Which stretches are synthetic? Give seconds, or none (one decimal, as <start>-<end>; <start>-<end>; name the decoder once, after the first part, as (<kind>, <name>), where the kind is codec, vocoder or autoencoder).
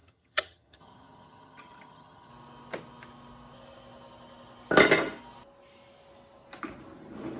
0.0-2.3 (vocoder, HiFi-GAN)